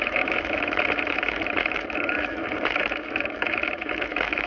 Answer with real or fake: fake